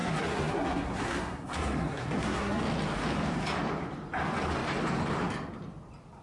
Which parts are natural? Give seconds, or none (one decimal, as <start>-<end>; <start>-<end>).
2.6-6.2